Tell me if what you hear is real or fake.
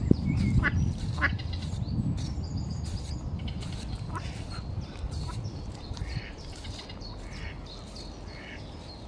real